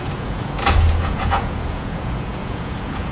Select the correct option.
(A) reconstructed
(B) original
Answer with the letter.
A